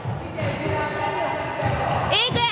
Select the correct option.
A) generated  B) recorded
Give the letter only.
B